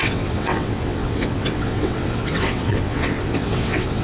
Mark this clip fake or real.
fake